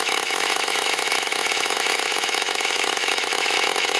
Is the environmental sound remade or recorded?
remade